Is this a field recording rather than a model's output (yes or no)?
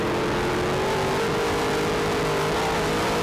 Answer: yes